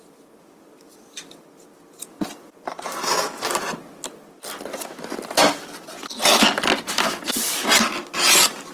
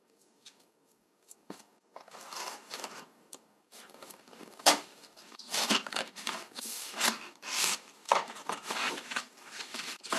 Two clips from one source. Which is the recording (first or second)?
first